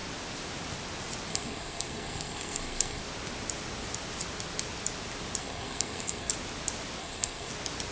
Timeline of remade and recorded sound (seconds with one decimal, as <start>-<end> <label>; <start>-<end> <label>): 0.0-1.3 recorded; 1.3-3.0 remade; 3.0-5.4 recorded; 5.4-6.3 remade; 6.3-7.0 recorded; 7.0-7.5 remade; 7.5-7.9 recorded